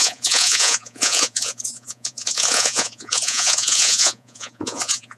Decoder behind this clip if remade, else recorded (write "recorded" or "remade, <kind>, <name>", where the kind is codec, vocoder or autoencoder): remade, vocoder, Vocos